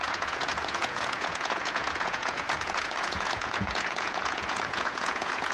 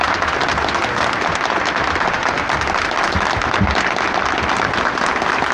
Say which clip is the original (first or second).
second